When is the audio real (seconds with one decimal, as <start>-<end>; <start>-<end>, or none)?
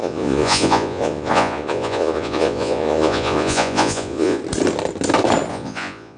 4.4-5.5